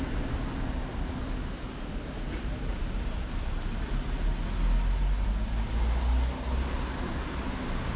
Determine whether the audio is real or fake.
real